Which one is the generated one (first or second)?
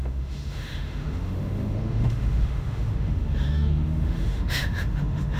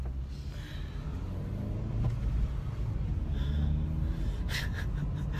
first